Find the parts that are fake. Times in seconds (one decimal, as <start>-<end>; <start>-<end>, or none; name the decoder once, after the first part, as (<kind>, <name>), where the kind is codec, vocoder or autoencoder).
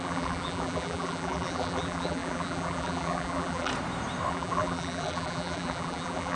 0.0-3.7 (vocoder, BigVGAN v2); 4.3-6.4